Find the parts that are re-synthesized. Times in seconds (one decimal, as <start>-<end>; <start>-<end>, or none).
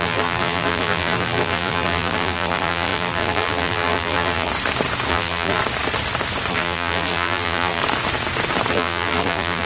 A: 0.0-4.5; 5.1-5.6; 6.5-7.8; 8.7-9.7